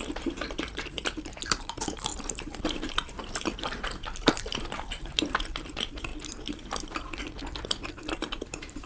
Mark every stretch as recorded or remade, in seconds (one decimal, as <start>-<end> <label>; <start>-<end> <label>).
0.0-6.1 remade; 6.1-7.9 recorded; 7.9-8.9 remade